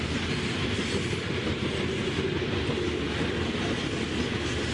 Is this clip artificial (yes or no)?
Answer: no